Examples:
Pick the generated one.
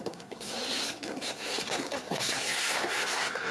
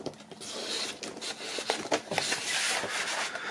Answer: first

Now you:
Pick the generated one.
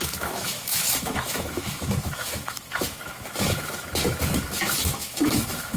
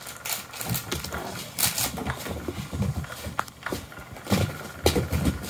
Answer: first